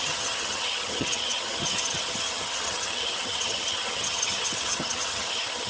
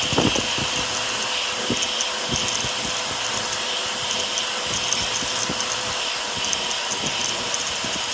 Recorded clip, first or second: second